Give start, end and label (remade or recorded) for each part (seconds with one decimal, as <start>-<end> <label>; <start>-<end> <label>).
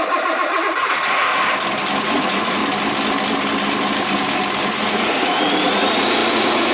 0.0-1.3 remade; 1.3-2.0 recorded; 2.0-2.6 remade; 2.6-4.7 recorded; 4.7-6.7 remade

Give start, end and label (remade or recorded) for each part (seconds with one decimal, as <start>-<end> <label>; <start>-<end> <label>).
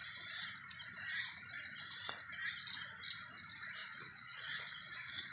0.0-3.8 recorded; 3.8-5.3 remade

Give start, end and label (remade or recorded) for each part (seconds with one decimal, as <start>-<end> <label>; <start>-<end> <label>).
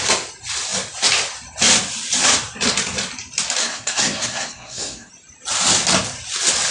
0.0-3.6 recorded; 3.6-5.1 remade; 5.1-6.7 recorded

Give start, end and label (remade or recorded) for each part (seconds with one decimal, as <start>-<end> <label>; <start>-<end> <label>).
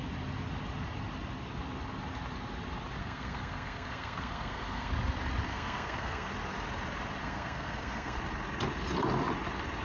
0.0-3.0 recorded; 3.0-4.9 remade; 4.9-5.5 recorded; 5.5-6.3 remade; 6.3-7.2 recorded; 7.2-8.2 remade; 8.2-9.8 recorded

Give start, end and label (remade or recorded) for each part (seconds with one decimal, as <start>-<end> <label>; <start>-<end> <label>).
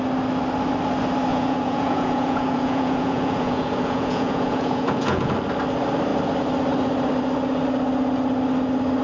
0.0-1.3 recorded; 1.3-5.3 remade; 5.3-9.0 recorded